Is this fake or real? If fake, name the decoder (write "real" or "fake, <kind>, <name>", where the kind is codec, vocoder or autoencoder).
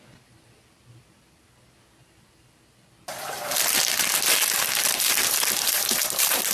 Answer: real